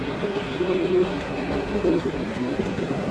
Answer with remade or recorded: remade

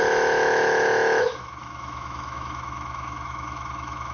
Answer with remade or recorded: remade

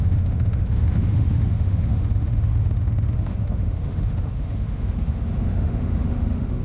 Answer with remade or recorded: remade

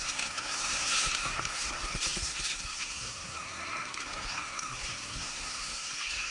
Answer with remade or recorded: remade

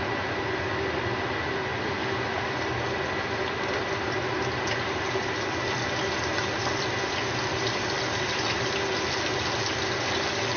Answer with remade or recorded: recorded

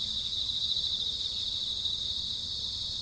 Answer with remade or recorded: recorded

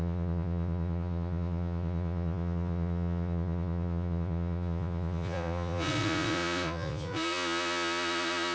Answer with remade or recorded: remade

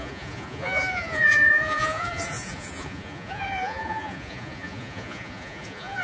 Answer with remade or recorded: remade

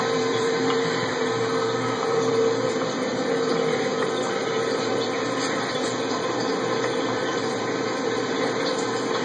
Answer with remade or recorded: remade